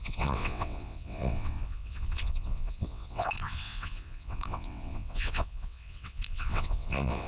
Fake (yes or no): yes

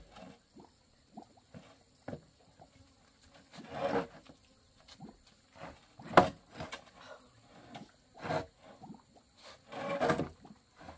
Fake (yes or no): no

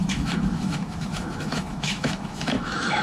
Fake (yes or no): yes